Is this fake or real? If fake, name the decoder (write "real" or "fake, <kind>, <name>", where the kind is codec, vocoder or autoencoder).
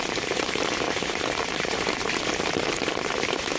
fake, vocoder, BigVGAN v2